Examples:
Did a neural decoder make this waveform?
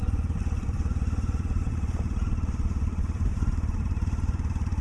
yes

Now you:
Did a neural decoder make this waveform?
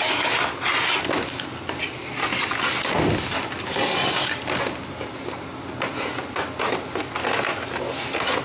no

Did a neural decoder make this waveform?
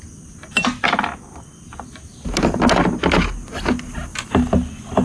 no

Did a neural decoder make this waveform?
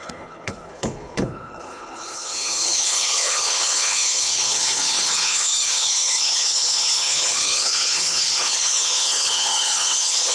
yes